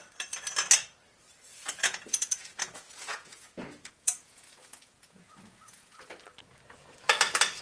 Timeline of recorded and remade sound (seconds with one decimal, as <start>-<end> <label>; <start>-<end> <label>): 0.0-1.5 recorded; 1.5-6.1 remade; 6.1-7.6 recorded